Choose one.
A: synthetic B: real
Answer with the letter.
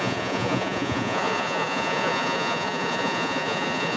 A